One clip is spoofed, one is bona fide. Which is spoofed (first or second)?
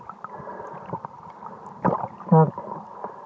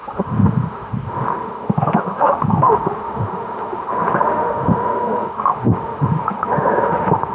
second